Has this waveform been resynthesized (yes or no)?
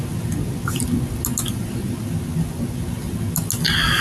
no